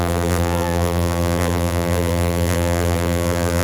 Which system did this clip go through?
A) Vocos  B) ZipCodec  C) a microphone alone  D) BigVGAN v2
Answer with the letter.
D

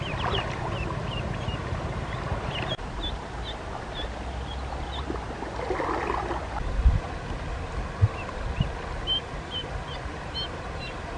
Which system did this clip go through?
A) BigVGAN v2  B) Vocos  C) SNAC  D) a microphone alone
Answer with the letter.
D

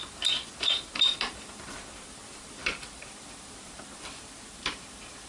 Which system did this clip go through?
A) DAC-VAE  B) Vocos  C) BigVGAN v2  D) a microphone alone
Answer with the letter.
C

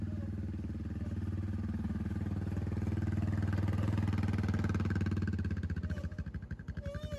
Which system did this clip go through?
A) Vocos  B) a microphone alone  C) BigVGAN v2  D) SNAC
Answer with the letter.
B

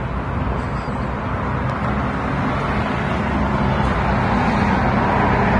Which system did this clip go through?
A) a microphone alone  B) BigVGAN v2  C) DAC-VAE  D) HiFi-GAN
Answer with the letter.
A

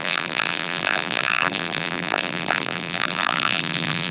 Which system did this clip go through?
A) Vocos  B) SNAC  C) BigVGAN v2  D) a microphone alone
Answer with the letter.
C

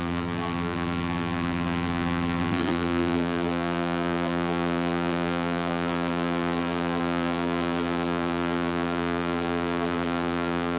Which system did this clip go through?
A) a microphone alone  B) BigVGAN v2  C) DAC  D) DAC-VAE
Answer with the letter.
B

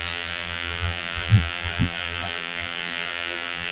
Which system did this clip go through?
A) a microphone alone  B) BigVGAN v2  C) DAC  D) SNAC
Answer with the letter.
B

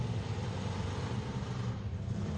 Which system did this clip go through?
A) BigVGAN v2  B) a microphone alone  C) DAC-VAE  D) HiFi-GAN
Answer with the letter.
A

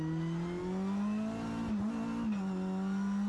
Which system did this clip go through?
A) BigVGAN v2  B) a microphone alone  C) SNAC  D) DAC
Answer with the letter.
B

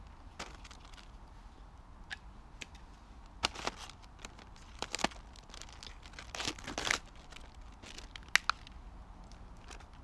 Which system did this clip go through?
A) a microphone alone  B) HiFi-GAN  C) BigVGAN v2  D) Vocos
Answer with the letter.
A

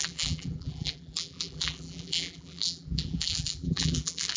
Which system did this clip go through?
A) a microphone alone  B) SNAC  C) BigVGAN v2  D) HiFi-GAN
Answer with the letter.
C